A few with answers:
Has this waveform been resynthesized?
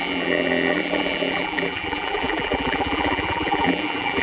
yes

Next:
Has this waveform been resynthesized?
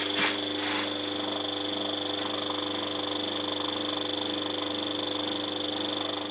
no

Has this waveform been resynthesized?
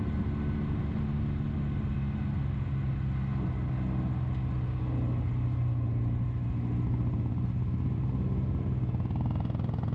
no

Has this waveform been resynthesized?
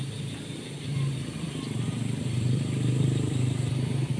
yes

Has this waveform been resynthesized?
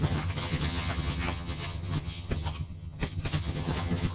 yes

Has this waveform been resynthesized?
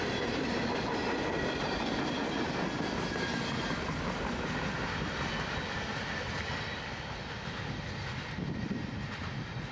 no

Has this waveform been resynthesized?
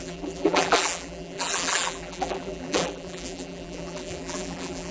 yes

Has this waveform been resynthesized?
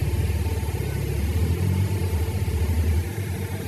no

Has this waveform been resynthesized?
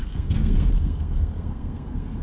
yes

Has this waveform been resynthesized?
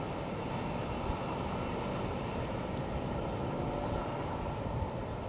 no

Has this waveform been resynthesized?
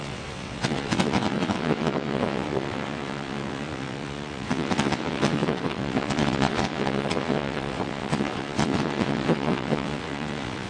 yes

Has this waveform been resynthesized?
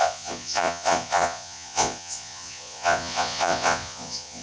yes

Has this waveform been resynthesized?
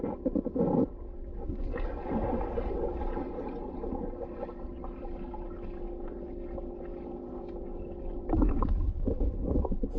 no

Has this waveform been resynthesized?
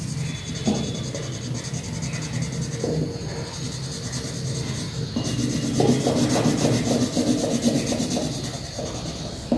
no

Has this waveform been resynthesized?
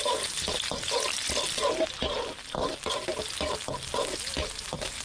no